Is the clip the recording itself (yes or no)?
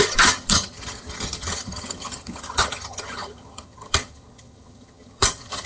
no